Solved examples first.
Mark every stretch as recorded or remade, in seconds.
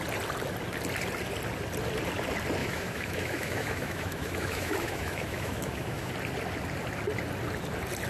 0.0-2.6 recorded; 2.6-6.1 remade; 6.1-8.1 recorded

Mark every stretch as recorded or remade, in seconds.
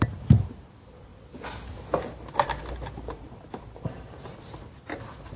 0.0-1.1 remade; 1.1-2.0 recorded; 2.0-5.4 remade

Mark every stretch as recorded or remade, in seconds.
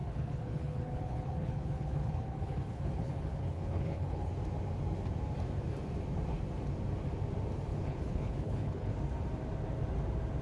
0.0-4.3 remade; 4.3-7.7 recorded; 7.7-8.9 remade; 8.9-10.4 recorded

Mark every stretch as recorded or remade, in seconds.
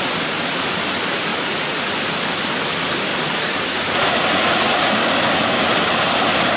0.0-1.3 recorded; 1.3-1.8 remade; 1.8-3.1 recorded; 3.1-4.9 remade; 4.9-6.6 recorded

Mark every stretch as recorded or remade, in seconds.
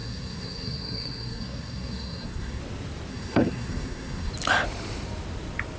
0.0-2.6 remade; 2.6-3.1 recorded; 3.1-4.3 remade; 4.3-5.8 recorded